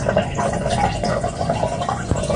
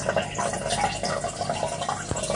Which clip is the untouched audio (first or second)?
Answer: second